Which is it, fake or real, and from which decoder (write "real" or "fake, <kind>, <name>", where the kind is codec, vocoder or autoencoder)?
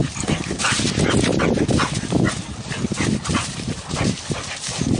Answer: real